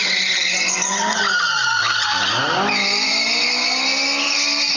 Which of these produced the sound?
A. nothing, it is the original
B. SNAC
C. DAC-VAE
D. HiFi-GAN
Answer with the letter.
A